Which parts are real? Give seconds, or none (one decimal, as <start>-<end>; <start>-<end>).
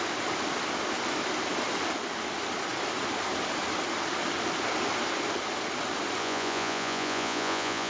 0.0-6.2